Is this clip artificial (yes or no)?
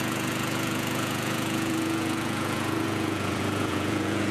yes